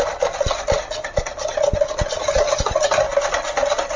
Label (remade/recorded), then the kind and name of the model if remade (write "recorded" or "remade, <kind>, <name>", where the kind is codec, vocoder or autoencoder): recorded